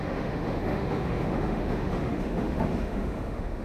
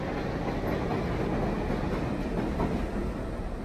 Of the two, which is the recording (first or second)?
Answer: second